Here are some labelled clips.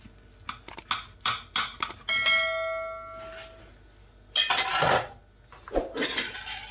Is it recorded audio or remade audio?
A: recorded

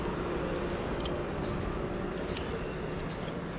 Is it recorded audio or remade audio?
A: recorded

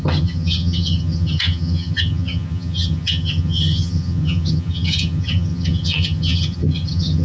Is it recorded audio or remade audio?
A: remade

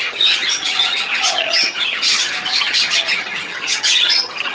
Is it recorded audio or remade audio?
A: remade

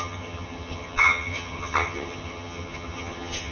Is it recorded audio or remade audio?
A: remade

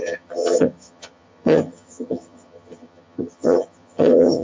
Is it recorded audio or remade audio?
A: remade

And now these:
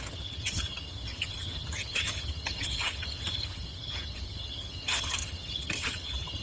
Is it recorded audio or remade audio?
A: remade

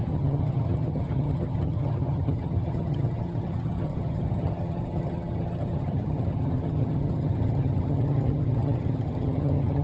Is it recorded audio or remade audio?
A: remade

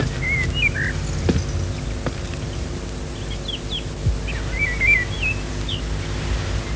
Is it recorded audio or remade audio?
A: recorded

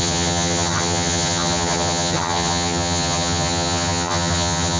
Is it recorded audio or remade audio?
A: remade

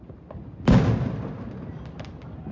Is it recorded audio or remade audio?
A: recorded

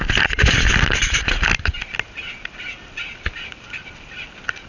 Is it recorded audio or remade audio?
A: recorded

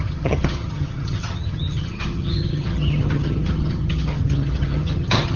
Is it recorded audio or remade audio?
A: remade